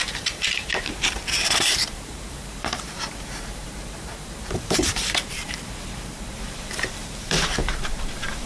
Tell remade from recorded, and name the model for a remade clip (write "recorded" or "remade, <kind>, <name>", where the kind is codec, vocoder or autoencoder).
remade, vocoder, BigVGAN v2